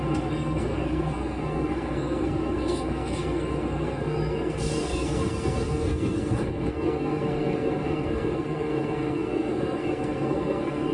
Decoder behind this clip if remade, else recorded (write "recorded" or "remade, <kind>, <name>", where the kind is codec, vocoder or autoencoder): remade, codec, SNAC